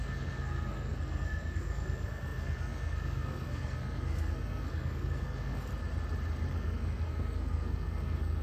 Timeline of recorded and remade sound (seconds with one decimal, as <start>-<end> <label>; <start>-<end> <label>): 0.0-5.7 remade; 5.7-6.5 recorded; 6.5-8.4 remade